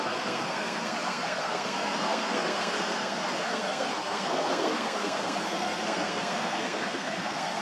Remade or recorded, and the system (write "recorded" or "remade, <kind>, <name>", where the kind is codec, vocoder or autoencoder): remade, codec, SNAC